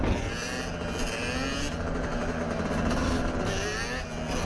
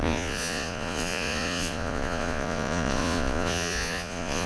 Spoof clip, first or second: second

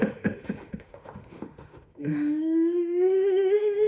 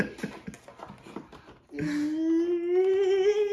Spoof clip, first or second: first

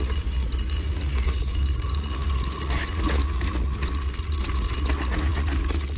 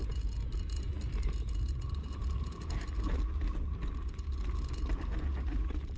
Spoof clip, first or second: first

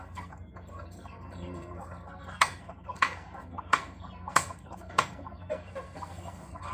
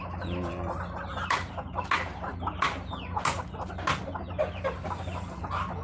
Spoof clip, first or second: first